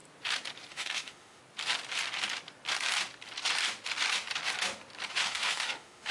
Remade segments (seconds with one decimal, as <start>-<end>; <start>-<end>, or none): 0.7-1.4; 5.1-6.1